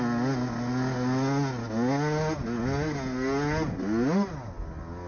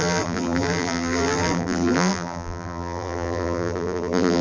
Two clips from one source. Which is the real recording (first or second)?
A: first